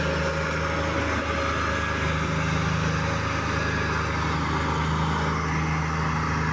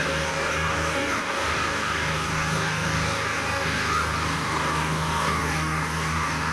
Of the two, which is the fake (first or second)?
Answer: second